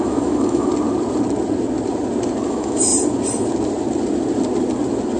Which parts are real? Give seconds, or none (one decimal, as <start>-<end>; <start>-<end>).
0.7-2.5; 2.9-5.2